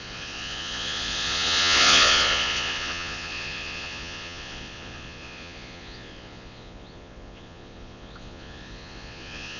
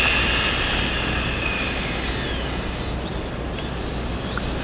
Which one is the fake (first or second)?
first